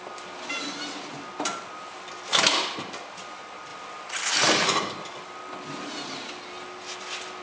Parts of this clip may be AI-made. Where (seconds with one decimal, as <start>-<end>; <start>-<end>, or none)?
none